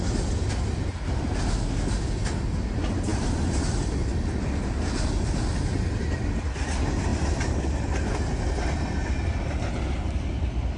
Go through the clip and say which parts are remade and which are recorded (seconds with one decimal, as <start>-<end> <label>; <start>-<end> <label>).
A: 0.0-10.8 recorded